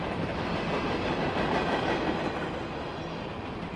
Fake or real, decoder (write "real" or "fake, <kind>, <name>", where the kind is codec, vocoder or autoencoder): real